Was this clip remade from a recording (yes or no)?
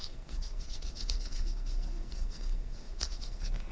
yes